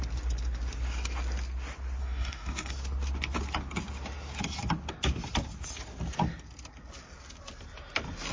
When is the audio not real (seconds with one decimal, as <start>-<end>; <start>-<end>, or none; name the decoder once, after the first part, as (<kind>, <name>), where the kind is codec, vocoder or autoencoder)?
2.0-2.7 (codec, DAC)

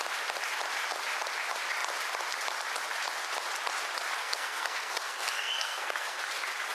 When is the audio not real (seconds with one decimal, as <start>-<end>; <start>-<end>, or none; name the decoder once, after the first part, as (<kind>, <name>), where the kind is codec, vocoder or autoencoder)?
4.2-6.2 (codec, SNAC)

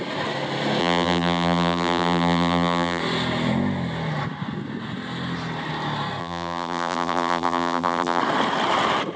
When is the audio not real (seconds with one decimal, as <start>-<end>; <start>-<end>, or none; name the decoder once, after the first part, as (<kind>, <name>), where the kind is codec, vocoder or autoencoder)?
0.8-3.0 (vocoder, BigVGAN v2); 6.2-8.2

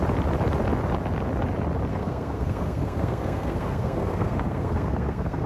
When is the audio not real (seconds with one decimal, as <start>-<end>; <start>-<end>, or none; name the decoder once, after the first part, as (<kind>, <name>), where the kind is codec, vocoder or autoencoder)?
1.9-5.5 (codec, SNAC)